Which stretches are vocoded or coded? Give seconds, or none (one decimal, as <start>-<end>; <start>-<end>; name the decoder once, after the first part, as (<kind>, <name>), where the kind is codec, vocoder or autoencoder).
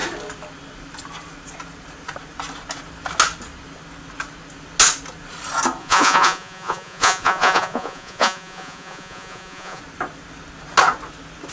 5.8-9.8 (vocoder, Vocos)